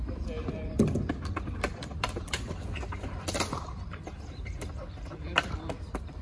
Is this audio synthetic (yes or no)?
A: no